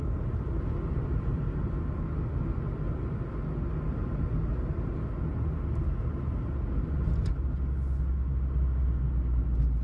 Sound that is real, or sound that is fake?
real